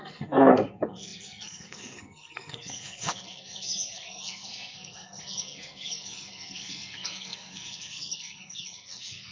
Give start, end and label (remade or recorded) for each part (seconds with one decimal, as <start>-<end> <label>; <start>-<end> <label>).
0.0-9.3 remade